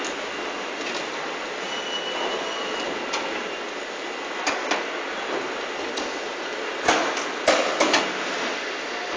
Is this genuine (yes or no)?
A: yes